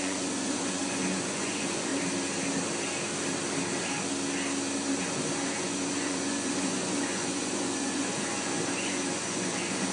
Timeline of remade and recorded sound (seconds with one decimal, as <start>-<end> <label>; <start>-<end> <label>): 0.0-1.9 remade; 1.9-5.0 recorded; 5.0-9.9 remade